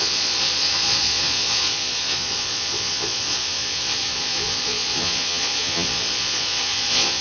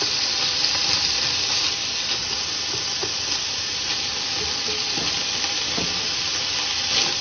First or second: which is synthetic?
first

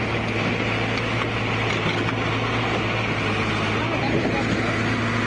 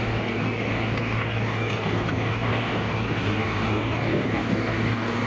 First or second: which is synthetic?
second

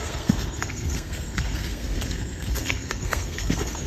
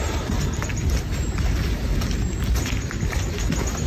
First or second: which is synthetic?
first